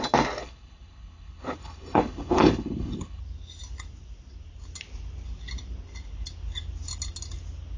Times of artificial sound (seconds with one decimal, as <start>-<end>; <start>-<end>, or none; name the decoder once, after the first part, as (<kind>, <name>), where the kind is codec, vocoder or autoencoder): 0.4-3.2 (codec, HILCodec)